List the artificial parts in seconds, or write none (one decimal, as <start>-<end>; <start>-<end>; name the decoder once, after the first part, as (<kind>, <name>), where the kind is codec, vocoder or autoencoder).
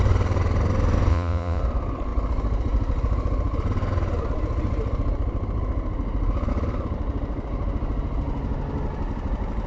1.1-1.6 (vocoder, Vocos)